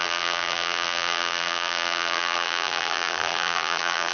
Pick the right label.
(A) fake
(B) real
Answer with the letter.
A